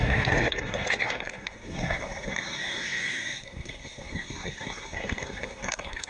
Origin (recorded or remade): remade